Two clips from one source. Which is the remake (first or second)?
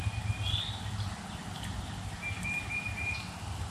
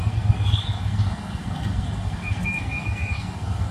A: second